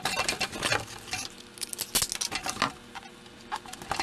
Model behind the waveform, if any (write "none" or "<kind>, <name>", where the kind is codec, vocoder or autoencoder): none